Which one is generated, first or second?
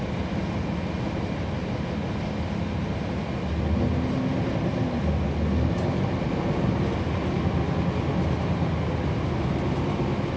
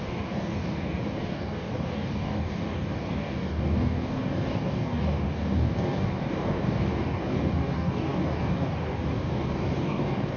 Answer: second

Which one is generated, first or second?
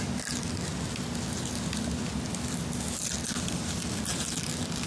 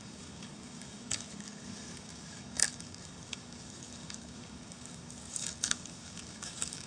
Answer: second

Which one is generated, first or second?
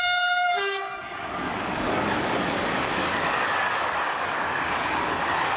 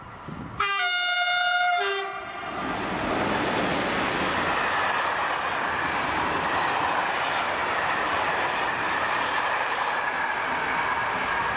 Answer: first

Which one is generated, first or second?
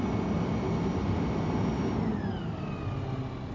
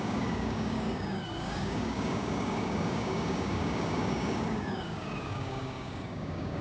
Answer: second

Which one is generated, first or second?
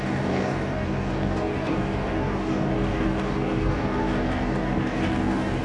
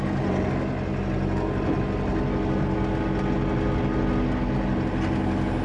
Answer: first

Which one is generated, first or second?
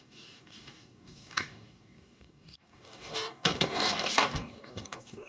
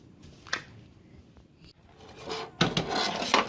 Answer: first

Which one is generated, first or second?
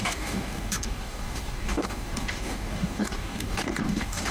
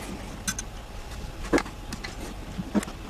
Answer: first